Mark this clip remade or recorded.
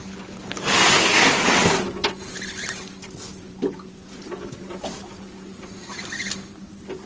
recorded